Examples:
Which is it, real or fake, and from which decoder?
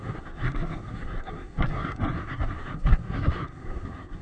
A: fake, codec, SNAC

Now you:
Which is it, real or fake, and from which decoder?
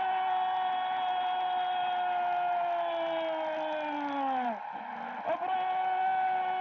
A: real